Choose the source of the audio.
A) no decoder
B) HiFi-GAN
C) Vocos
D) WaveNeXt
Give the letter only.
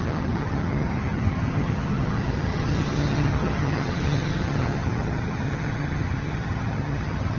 B